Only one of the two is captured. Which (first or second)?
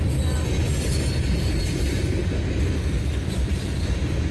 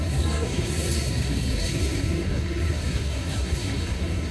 first